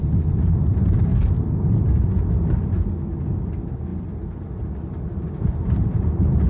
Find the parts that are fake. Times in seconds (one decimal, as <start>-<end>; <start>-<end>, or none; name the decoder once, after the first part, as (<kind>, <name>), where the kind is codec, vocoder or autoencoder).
none